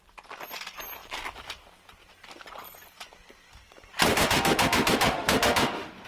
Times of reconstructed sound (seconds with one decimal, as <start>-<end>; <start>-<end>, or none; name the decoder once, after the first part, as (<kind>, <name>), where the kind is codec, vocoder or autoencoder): 4.1-6.1 (autoencoder, DAC-VAE)